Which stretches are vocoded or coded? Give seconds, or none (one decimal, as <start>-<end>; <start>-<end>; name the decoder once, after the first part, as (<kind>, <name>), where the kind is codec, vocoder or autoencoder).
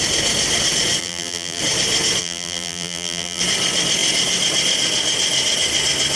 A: 1.0-1.6 (vocoder, BigVGAN v2); 2.2-3.4